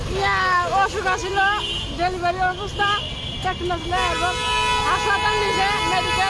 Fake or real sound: real